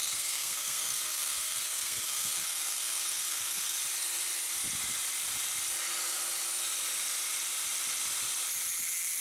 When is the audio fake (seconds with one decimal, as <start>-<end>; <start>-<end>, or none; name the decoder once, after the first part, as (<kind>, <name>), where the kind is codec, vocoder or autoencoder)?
0.0-3.8 (codec, SNAC)